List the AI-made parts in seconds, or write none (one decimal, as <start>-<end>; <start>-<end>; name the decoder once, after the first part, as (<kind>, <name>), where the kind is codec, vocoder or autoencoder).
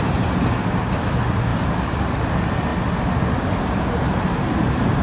1.5-2.3 (vocoder, BigVGAN v2); 2.7-3.8